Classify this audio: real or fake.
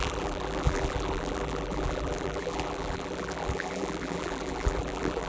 fake